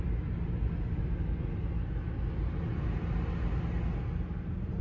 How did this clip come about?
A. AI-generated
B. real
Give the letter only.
B